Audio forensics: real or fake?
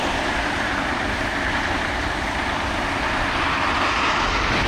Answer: real